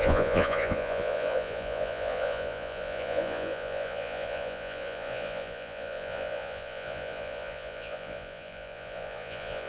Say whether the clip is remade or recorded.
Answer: remade